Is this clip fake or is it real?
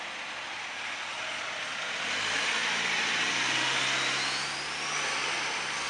real